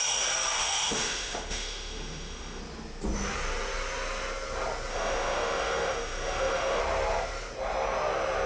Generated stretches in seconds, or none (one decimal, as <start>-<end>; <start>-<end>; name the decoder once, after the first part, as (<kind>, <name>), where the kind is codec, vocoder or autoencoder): 0.6-2.6 (autoencoder, DAC-VAE); 4.9-6.8